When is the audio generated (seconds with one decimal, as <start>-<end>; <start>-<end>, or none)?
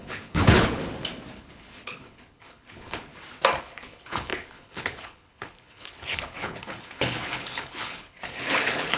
0.0-0.8; 1.3-3.1; 3.6-9.0